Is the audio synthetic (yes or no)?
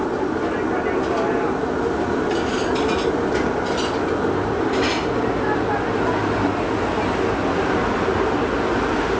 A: no